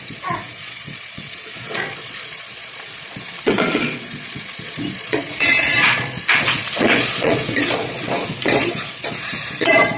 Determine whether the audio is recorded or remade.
remade